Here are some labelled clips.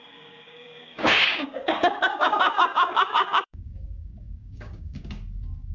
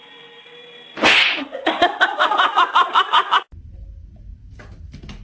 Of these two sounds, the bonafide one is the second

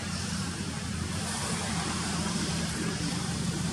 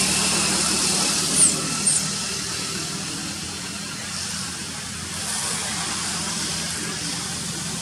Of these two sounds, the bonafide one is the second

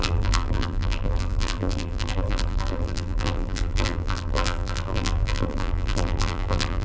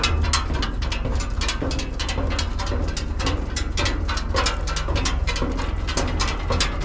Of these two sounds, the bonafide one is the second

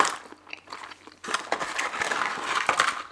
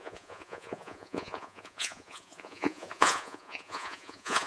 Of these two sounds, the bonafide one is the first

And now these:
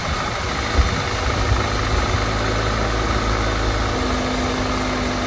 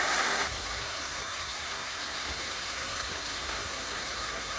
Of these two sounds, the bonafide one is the first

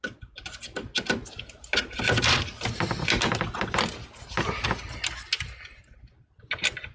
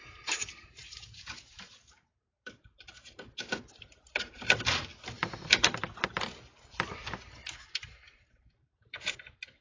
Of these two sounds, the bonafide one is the first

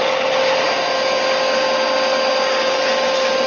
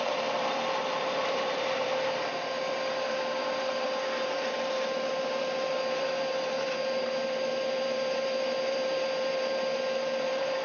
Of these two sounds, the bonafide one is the first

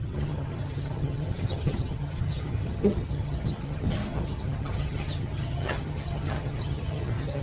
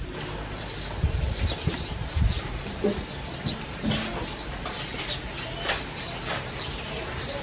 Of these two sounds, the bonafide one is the second